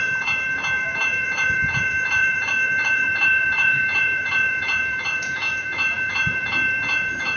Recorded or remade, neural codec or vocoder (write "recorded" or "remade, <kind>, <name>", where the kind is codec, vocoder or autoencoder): remade, vocoder, Vocos